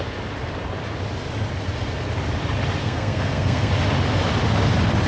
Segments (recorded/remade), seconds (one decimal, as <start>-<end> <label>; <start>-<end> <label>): 0.0-2.8 recorded; 2.8-3.7 remade; 3.7-5.1 recorded